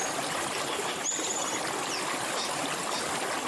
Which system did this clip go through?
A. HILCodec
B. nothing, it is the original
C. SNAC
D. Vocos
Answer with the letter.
B